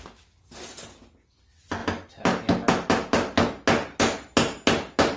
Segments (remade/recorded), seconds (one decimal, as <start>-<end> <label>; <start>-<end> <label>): 0.0-5.2 recorded

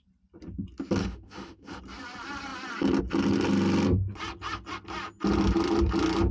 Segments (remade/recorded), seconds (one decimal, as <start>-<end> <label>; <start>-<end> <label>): 0.0-1.0 recorded; 1.0-1.8 remade; 1.8-6.3 recorded

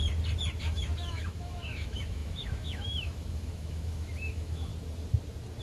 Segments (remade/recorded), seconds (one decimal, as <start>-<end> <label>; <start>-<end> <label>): 0.0-0.6 recorded; 0.6-4.7 remade; 4.7-5.6 recorded

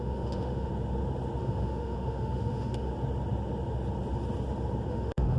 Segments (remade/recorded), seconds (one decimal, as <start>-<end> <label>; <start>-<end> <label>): 0.0-0.7 remade; 0.7-1.4 recorded; 1.4-2.9 remade; 2.9-4.9 recorded; 4.9-5.4 remade

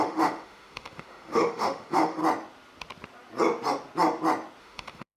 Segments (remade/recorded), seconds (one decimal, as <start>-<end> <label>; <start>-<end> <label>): 0.0-2.2 remade; 2.2-4.6 recorded; 4.6-5.2 remade

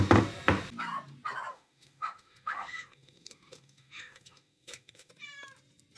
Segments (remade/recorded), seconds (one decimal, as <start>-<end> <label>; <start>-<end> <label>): 0.0-1.5 recorded; 1.5-5.1 remade; 5.1-6.0 recorded

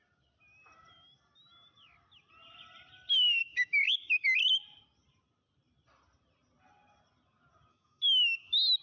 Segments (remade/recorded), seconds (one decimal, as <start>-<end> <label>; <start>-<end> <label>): 0.0-3.4 recorded; 3.4-4.6 remade; 4.6-7.7 recorded; 7.7-8.8 remade